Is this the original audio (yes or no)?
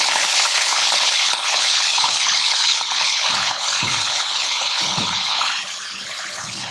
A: no